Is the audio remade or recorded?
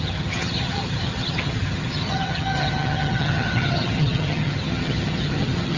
remade